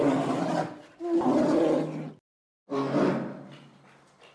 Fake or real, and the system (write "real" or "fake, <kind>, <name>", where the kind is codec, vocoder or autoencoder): real